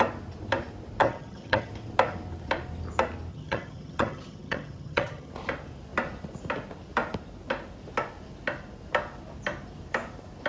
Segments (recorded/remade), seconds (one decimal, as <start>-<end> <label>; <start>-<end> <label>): 0.0-1.0 recorded; 1.0-1.7 remade; 1.7-3.3 recorded; 3.3-5.3 remade; 5.3-10.5 recorded